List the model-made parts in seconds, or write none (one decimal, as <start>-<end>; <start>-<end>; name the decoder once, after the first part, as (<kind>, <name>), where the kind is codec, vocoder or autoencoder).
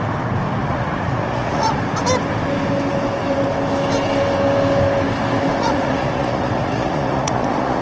0.6-1.8 (vocoder, Vocos); 5.6-7.8